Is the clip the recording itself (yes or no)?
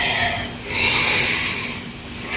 yes